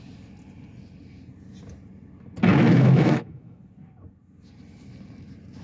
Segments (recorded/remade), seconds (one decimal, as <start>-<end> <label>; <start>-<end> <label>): 0.0-2.5 recorded; 2.5-3.6 remade; 3.6-5.6 recorded